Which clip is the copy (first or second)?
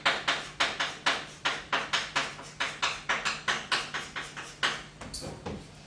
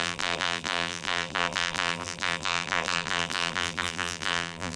second